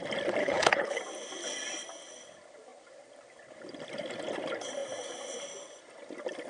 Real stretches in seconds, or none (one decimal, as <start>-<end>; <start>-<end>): 0.0-0.4; 1.0-6.5